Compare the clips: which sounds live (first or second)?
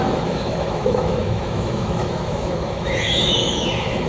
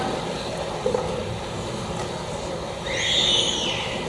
second